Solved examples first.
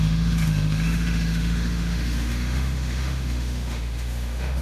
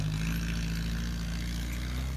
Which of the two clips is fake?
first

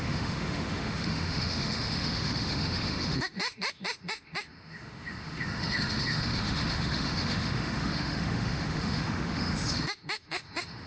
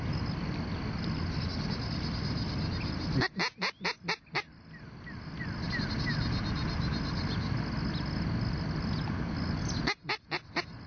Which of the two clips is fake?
first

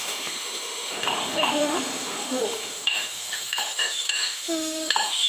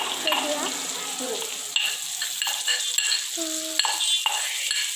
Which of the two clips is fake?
first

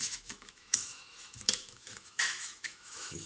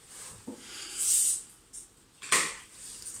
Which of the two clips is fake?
first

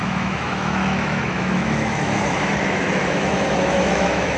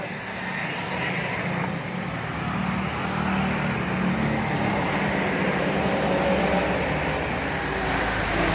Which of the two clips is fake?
first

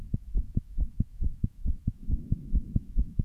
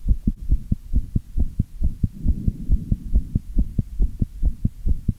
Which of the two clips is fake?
first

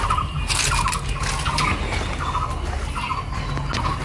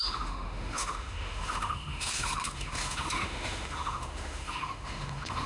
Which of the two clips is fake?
second